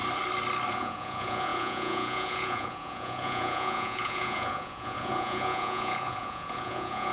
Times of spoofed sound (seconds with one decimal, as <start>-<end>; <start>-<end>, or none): 0.7-7.1